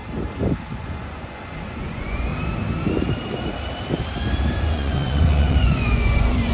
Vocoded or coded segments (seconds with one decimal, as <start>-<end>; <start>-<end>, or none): 0.7-2.3; 4.6-6.5